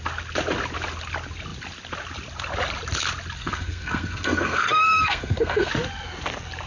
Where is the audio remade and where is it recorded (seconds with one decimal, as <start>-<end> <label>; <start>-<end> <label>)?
0.0-3.4 recorded; 3.4-5.7 remade; 5.7-6.7 recorded